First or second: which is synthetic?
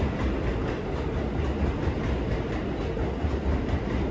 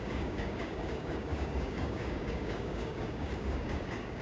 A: second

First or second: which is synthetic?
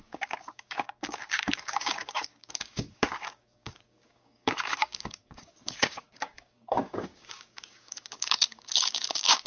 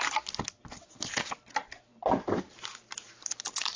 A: first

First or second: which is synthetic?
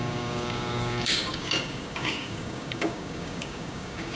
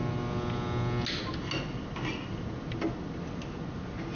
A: first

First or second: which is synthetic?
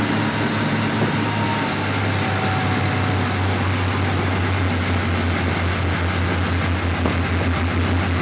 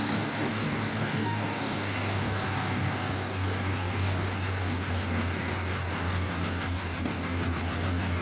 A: second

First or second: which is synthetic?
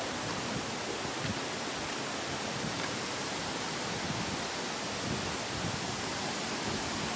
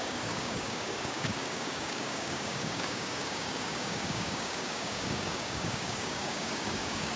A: second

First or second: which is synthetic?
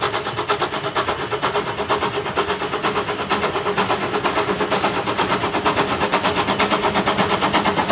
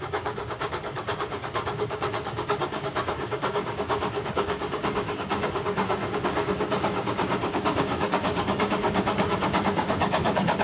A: second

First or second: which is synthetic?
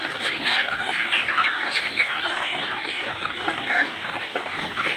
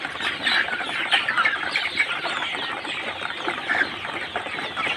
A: first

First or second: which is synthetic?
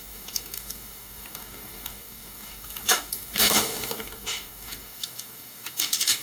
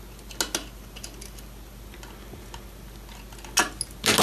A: first